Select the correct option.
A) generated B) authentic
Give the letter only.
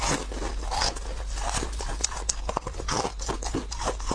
B